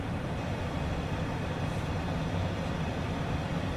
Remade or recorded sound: remade